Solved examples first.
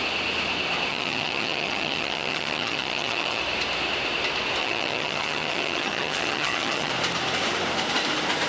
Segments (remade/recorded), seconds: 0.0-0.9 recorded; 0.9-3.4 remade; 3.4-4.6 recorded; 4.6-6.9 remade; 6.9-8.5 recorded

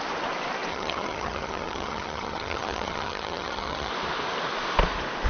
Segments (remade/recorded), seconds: 0.0-0.7 recorded; 0.7-3.9 remade; 3.9-5.3 recorded

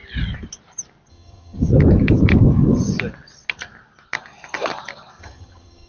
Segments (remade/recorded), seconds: 0.0-1.1 recorded; 1.1-1.7 remade; 1.7-5.2 recorded; 5.2-5.9 remade